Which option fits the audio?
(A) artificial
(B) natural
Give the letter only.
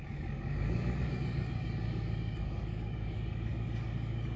A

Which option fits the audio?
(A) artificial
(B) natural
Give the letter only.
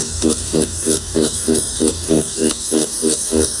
A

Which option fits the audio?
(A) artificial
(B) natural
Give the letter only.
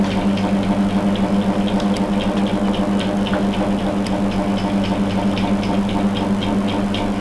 B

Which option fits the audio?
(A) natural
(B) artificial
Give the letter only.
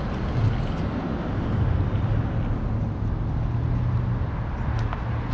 A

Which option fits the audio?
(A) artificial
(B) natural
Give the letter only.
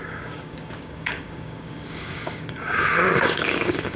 A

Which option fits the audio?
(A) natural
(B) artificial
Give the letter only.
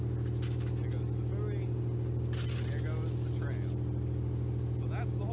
A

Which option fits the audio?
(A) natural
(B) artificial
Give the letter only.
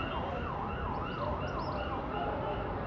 A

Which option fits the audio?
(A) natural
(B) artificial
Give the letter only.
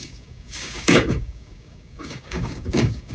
B